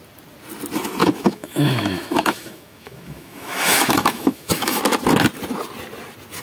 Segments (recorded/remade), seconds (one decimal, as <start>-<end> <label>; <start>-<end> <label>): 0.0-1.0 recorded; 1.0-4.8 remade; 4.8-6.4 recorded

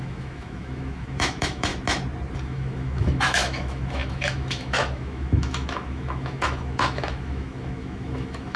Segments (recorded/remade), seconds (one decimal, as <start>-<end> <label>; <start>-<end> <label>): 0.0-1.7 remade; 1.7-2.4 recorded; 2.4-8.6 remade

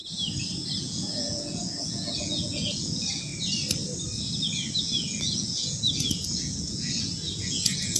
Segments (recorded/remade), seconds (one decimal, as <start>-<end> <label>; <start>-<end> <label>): 0.0-0.8 recorded; 0.8-3.3 remade; 3.3-4.8 recorded; 4.8-8.0 remade